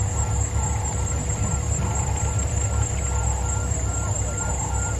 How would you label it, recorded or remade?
recorded